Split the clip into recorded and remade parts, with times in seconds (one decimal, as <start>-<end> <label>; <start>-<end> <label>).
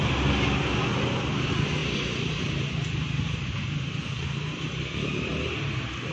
0.0-1.8 recorded; 1.8-4.7 remade; 4.7-6.1 recorded